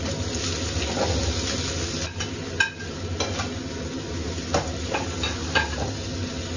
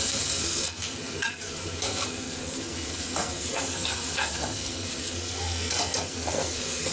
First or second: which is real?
first